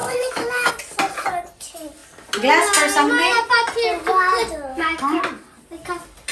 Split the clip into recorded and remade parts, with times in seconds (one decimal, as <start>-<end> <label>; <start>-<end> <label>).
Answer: 0.0-0.7 remade; 0.7-4.7 recorded; 4.7-5.2 remade; 5.2-6.3 recorded